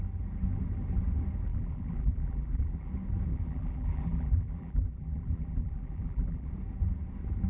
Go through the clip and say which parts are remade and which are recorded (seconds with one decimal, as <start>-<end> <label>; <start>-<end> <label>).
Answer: 0.0-1.5 recorded; 1.5-2.9 remade; 2.9-3.3 recorded; 3.3-6.5 remade; 6.5-7.5 recorded